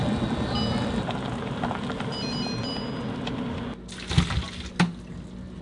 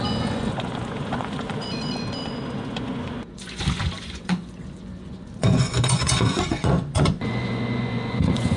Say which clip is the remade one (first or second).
second